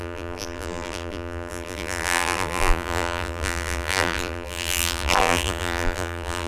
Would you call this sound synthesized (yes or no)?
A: yes